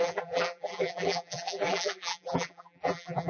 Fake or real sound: fake